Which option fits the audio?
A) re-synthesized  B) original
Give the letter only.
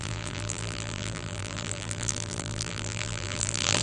A